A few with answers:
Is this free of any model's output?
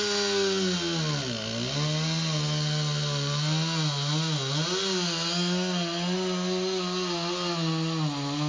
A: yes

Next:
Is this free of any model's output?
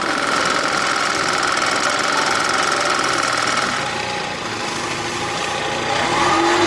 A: yes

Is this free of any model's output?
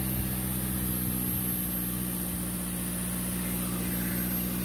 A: yes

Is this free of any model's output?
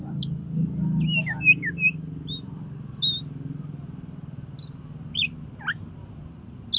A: yes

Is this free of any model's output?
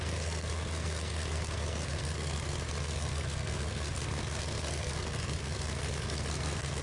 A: no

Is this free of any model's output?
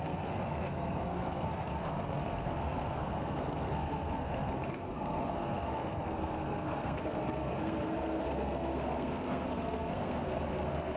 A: no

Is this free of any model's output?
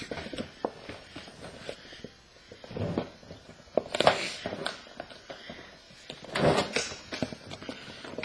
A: yes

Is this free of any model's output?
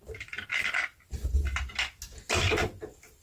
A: yes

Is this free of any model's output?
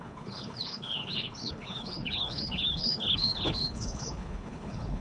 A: no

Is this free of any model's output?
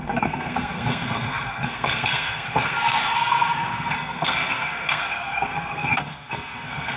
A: no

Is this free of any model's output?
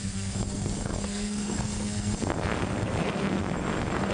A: no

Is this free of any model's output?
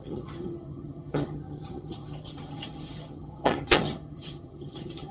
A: no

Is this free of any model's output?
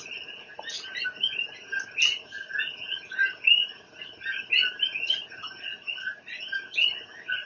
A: yes